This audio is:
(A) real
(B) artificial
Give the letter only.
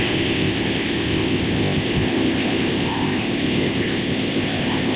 B